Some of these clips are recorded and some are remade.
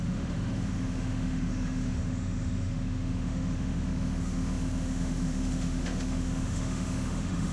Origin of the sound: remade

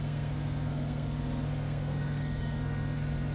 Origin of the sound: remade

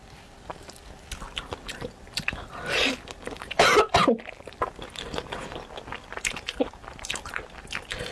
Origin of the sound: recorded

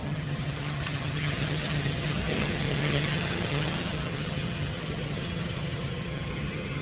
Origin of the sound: remade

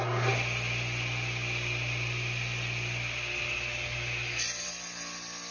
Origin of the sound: recorded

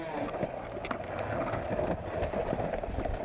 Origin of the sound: recorded